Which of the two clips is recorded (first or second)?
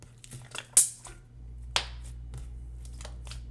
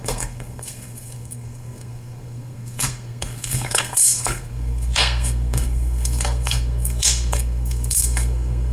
first